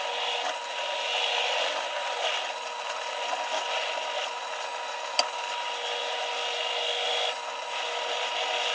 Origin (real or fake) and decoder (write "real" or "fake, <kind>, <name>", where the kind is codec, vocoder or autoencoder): real